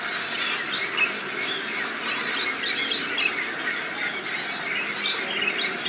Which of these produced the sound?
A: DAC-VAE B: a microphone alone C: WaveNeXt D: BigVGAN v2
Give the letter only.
B